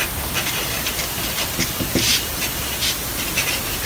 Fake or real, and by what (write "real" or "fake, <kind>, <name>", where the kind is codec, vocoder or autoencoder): real